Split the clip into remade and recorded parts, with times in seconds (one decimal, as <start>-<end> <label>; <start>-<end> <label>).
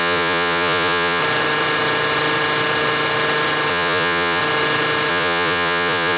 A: 0.0-1.2 remade; 1.2-3.7 recorded; 3.7-4.4 remade; 4.4-5.1 recorded; 5.1-6.2 remade